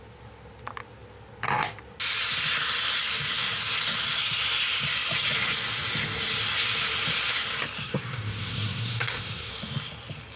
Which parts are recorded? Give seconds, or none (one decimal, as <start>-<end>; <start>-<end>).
0.0-7.8; 9.5-10.4